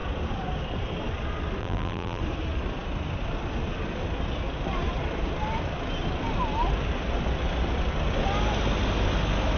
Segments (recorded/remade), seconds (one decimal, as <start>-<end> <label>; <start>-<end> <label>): 0.0-1.6 recorded; 1.6-2.2 remade; 2.2-9.6 recorded